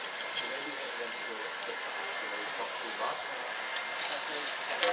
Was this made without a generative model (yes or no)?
yes